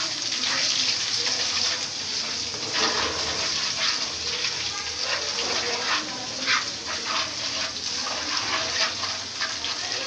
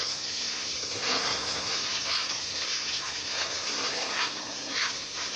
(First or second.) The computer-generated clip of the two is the second